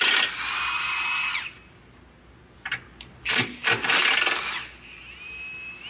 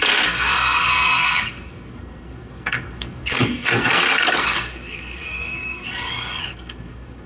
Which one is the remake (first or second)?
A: second